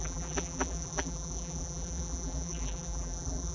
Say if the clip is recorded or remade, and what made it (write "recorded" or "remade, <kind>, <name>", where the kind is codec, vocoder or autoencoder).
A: remade, vocoder, BigVGAN v2